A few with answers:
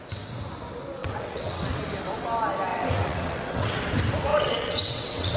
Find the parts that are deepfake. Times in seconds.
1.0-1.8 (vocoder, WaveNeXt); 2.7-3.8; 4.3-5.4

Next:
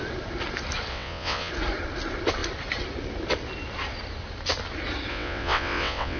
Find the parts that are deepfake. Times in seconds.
0.9-1.5 (vocoder, WaveNeXt); 5.1-6.2

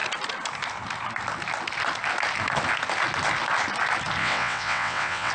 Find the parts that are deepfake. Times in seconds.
4.2-5.3 (vocoder, WaveNeXt)

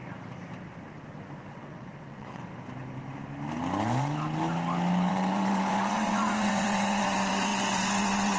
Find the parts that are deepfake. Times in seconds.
1.5-2.4 (vocoder, WaveNeXt); 5.1-8.4

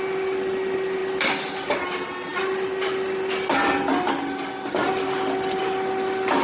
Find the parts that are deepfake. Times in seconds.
none

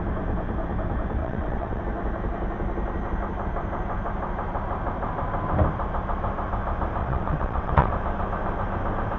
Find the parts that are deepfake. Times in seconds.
1.2-1.8 (vocoder, WaveNeXt); 7.0-7.9

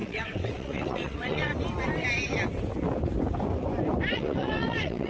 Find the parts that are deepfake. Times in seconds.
0.0-1.5 (vocoder, WaveNeXt); 4.1-5.1